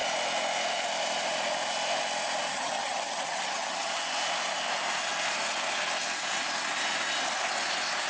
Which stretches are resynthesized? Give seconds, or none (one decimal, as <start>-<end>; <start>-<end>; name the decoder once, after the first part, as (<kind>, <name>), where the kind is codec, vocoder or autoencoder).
2.5-3.9 (vocoder, HiFi-GAN)